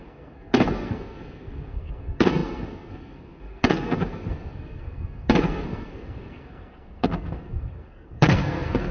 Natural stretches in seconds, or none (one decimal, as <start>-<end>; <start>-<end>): none